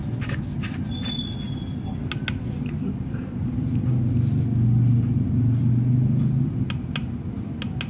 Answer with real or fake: real